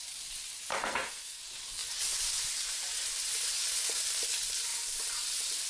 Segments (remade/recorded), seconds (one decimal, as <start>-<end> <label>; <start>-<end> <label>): 0.0-0.7 recorded; 0.7-1.4 remade; 1.4-5.7 recorded